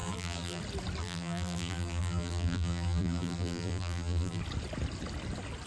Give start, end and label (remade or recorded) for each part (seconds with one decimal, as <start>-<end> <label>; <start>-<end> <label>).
0.0-0.6 remade; 0.6-1.0 recorded; 1.0-4.4 remade; 4.4-5.7 recorded